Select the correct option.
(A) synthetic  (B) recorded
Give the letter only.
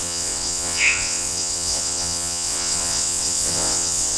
A